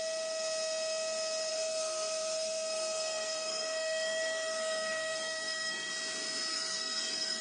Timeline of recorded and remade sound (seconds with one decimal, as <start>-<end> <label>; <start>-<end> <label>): 0.0-1.5 recorded; 1.5-5.9 remade; 5.9-6.5 recorded; 6.5-7.4 remade